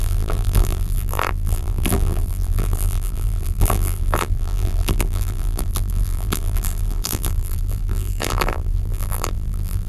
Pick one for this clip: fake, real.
fake